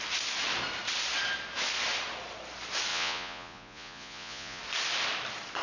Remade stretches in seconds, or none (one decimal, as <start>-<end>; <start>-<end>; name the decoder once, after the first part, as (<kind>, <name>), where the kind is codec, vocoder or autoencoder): 2.9-4.6 (vocoder, Vocos)